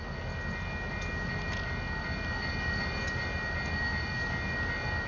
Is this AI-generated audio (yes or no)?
no